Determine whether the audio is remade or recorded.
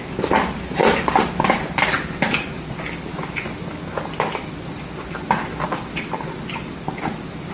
recorded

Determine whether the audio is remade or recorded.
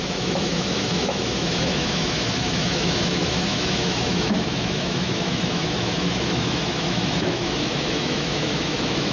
remade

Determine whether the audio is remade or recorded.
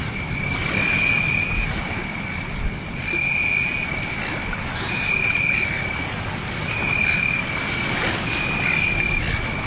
recorded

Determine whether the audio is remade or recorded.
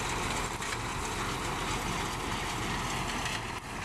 recorded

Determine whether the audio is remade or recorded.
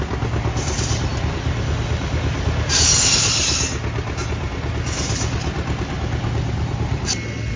recorded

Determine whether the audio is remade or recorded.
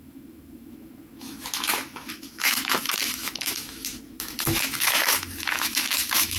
remade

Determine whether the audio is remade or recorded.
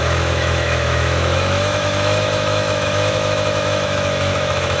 remade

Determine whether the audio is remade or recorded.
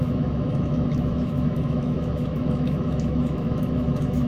remade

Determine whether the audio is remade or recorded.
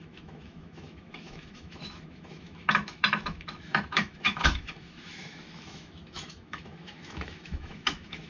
remade